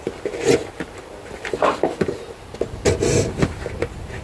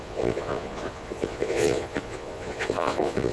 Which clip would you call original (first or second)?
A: first